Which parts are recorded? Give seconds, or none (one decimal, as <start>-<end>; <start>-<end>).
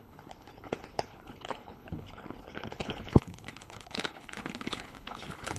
none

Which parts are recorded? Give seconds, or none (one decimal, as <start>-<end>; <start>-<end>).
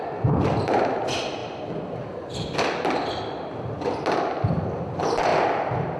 0.0-6.0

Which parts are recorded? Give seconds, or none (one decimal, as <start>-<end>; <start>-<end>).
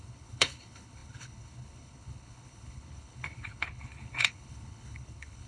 none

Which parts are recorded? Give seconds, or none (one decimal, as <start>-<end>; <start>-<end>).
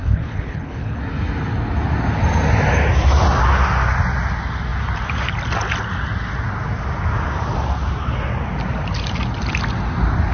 1.0-10.3